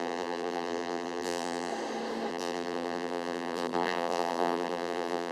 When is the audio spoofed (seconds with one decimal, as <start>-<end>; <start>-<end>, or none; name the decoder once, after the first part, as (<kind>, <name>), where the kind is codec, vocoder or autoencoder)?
0.0-1.7 (vocoder, BigVGAN v2); 2.3-5.3